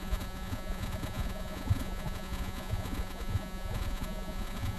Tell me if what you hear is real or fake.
fake